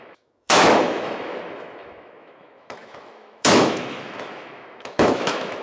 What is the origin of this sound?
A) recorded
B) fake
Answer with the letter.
B